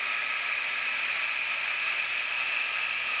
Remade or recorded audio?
recorded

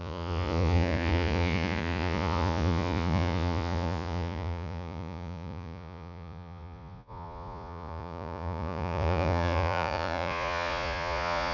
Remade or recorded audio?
remade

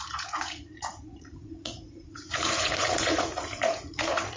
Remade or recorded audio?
remade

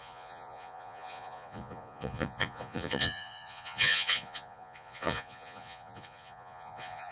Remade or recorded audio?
remade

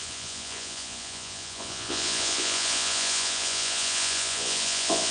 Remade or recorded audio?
remade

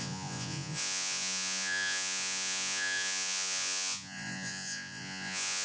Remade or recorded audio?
remade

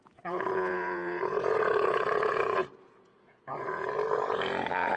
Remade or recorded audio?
remade